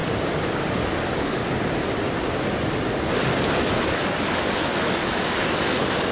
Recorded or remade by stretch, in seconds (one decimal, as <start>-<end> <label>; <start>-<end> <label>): 0.0-0.7 recorded; 0.7-1.4 remade; 1.4-3.7 recorded; 3.7-6.1 remade